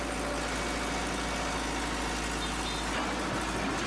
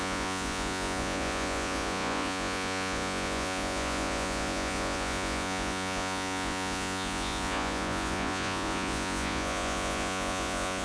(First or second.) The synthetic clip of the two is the second